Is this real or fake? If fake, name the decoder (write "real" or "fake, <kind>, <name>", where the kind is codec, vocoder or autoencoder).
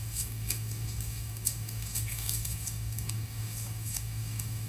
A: fake, codec, DAC